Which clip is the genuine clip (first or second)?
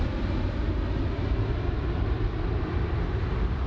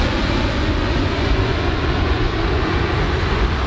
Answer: first